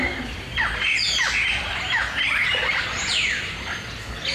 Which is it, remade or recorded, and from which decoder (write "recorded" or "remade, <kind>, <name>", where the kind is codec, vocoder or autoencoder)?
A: recorded